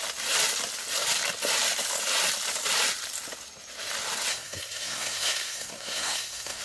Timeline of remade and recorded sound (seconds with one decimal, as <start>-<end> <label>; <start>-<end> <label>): 0.0-4.3 recorded; 4.3-6.6 remade